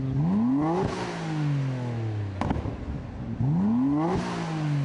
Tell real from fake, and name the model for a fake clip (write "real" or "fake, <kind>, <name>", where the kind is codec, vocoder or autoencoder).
real